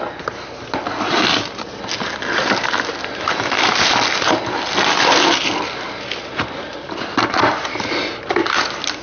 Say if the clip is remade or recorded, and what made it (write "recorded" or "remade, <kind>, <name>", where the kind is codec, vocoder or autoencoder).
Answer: recorded